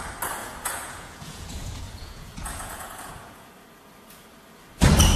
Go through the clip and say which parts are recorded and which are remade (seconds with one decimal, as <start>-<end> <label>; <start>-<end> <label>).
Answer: 0.0-0.4 recorded; 0.4-3.5 remade; 3.5-5.2 recorded